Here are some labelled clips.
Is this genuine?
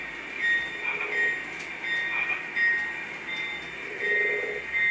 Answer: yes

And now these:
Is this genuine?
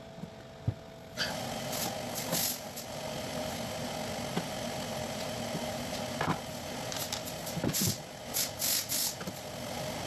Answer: yes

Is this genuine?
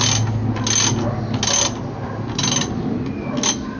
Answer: yes